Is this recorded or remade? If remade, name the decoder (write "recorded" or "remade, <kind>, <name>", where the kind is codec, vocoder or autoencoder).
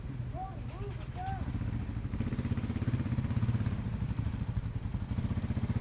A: recorded